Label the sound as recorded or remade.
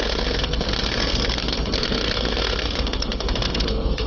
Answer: remade